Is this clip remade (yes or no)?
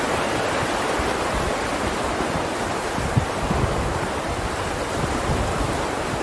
yes